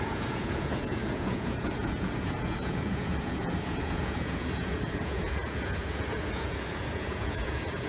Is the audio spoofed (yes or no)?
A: yes